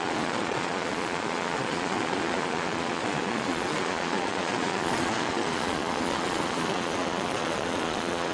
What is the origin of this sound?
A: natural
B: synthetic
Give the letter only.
B